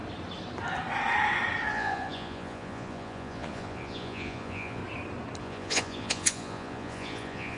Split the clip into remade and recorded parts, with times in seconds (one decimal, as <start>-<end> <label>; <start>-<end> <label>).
0.0-1.7 recorded; 1.7-4.8 remade; 4.8-5.4 recorded; 5.4-7.6 remade